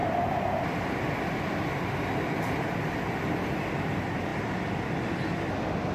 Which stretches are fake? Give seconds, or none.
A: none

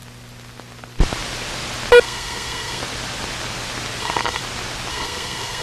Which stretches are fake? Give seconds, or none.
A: 2.0-2.8; 4.0-4.4; 4.9-5.6